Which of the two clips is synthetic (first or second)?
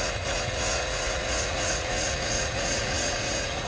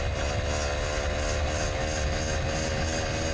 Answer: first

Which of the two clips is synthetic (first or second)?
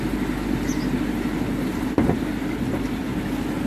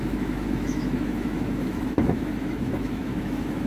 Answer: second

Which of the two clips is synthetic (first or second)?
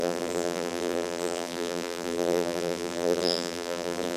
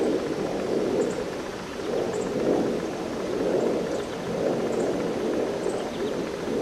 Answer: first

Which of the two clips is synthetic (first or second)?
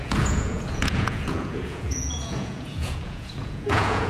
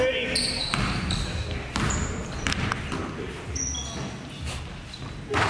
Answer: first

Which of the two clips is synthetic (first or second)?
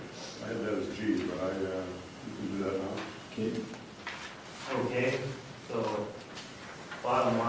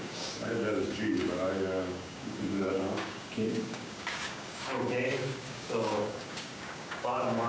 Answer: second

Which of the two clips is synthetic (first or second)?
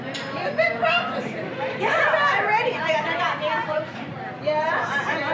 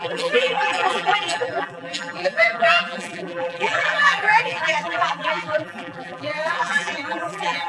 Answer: second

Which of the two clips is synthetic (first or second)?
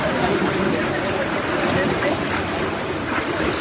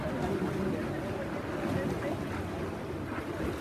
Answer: first